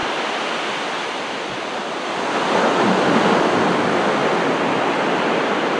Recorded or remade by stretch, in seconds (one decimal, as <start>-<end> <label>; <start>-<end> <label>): 0.0-5.8 recorded